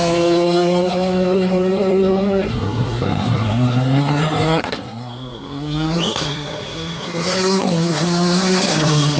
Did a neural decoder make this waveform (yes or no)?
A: yes